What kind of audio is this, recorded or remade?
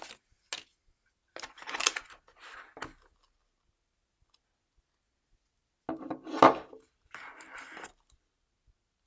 recorded